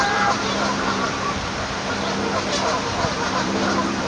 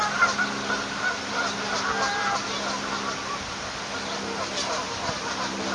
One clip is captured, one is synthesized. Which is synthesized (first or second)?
first